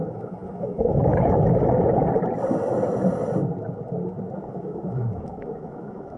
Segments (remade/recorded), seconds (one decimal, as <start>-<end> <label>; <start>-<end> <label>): 0.0-2.0 remade; 2.0-4.5 recorded; 4.5-6.2 remade